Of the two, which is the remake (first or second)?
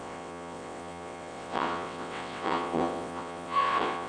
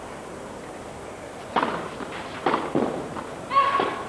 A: first